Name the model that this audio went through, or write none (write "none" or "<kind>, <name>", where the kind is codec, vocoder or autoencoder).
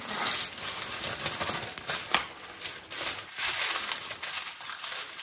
none